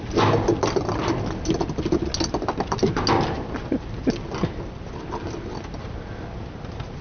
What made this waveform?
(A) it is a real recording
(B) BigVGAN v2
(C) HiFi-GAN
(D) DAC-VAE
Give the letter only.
A